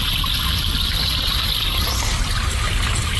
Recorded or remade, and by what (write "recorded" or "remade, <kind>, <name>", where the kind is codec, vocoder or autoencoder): remade, vocoder, BigVGAN v2